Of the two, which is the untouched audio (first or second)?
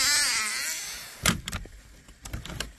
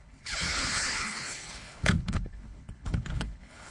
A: first